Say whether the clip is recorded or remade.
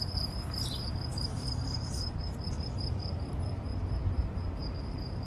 remade